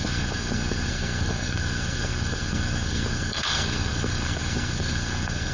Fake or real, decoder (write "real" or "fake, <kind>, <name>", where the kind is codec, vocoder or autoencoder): fake, codec, SNAC